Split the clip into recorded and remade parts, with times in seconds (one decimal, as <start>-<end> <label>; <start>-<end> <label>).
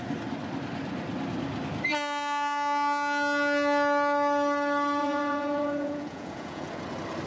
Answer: 0.0-5.0 recorded; 5.0-6.7 remade; 6.7-7.3 recorded